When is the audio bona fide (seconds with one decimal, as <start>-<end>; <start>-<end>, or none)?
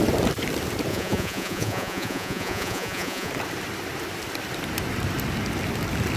0.0-0.9; 3.3-6.2